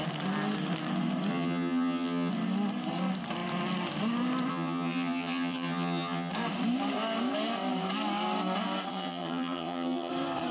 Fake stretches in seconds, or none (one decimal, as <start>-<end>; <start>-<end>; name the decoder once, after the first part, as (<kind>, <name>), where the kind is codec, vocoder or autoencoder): 1.3-2.3 (vocoder, HiFi-GAN); 4.5-6.3; 8.9-10.1